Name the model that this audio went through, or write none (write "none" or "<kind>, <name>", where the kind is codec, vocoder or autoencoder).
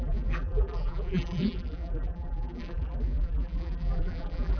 vocoder, BigVGAN v2